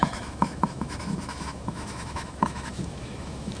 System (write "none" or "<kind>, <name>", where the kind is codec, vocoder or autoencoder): autoencoder, DAC-VAE